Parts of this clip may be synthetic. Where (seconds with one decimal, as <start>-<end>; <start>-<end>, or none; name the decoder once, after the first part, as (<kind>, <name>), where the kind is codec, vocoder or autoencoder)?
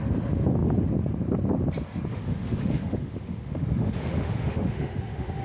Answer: 2.1-5.4 (autoencoder, DAC-VAE)